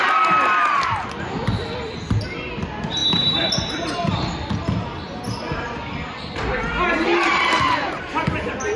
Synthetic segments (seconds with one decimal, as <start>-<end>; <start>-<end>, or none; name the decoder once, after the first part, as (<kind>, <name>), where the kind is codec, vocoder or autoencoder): none